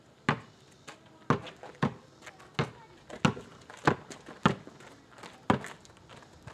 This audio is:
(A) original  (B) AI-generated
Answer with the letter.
A